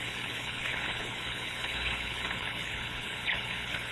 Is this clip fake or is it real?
fake